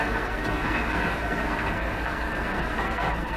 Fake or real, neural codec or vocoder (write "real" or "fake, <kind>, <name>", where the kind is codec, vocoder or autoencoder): fake, codec, SNAC